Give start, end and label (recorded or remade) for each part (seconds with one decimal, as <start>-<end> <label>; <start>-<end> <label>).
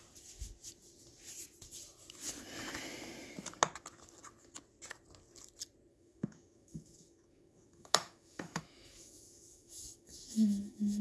0.0-5.9 recorded; 5.9-11.0 remade